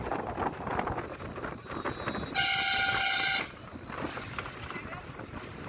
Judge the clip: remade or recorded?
recorded